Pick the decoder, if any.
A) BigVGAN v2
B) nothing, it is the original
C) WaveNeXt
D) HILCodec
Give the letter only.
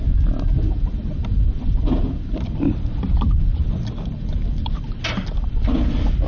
B